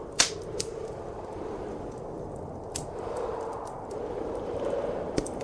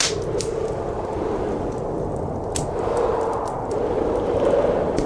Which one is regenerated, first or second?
first